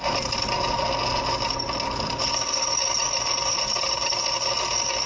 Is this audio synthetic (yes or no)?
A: no